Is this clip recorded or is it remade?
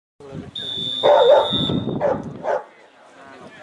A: recorded